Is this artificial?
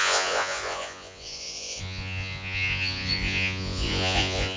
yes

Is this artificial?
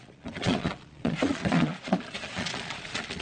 yes